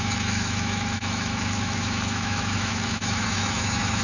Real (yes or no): no